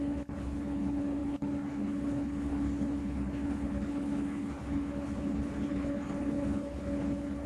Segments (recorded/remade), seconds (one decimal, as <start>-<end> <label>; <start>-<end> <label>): 0.0-7.5 remade